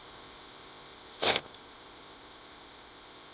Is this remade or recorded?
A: remade